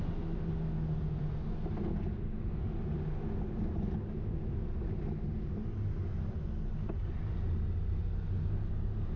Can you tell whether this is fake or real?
real